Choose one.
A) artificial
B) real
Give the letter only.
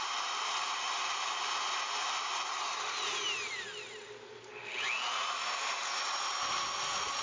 B